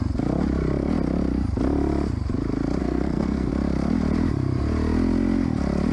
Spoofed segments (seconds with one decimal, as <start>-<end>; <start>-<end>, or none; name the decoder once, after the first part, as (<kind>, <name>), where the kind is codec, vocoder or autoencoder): 2.8-3.5 (codec, SNAC)